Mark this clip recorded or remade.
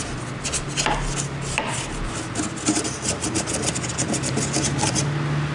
recorded